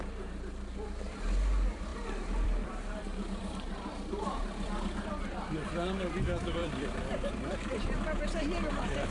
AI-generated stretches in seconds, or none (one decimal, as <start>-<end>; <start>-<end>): 1.9-5.7; 6.6-7.3